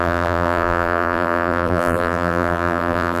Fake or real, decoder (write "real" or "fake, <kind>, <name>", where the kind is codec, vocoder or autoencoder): fake, vocoder, BigVGAN v2